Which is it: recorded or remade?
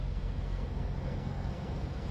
remade